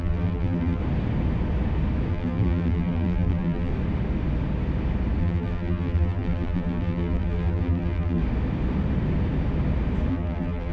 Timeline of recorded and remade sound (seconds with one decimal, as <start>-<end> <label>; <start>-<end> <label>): 0.0-0.8 remade; 0.8-2.1 recorded; 2.1-3.7 remade; 3.7-5.2 recorded; 5.2-8.2 remade; 8.2-10.1 recorded; 10.1-10.7 remade